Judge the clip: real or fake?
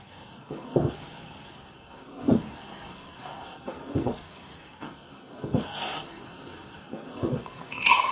fake